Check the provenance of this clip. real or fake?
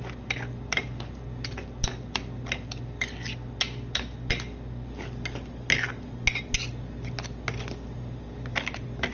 real